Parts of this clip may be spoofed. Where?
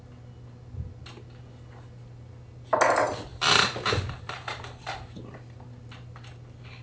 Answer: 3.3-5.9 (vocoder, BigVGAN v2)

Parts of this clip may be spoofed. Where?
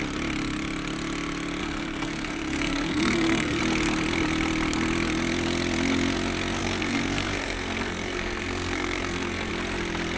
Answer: 1.6-3.6 (codec, SNAC); 6.6-9.5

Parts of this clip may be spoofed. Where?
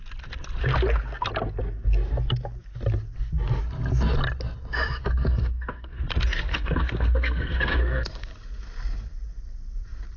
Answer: 5.0-6.0 (codec, SNAC); 6.5-8.3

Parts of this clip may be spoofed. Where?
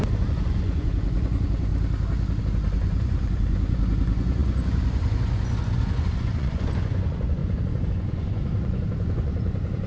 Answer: 0.0-1.7 (vocoder, Vocos); 2.4-9.9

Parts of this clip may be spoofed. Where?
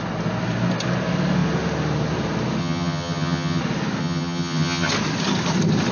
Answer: 2.6-3.6 (vocoder, HiFi-GAN); 4.0-4.9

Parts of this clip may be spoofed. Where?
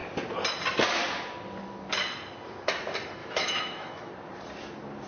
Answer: 3.2-4.1 (autoencoder, DAC-VAE)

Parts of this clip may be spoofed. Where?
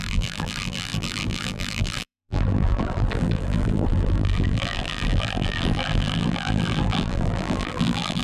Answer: 0.0-8.2 (vocoder, BigVGAN v2)